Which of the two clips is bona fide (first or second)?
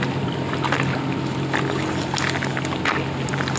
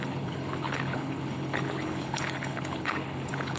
first